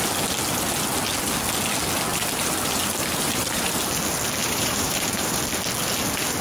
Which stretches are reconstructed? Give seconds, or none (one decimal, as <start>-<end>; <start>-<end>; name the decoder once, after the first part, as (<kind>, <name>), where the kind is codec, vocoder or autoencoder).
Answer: 2.1-3.9 (vocoder, BigVGAN v2); 4.4-5.4